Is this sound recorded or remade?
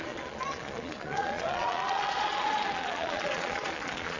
remade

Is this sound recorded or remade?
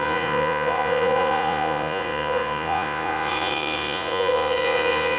remade